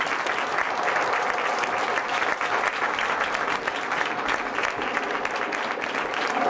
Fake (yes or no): no